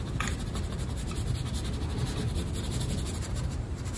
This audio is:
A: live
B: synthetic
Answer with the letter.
A